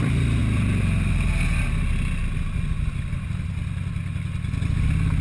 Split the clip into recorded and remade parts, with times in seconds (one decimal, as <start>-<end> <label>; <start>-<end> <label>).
0.0-5.2 recorded